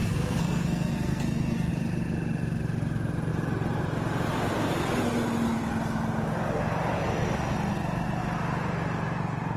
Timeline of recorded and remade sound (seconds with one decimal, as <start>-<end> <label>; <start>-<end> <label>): 0.0-1.7 remade; 1.7-9.6 recorded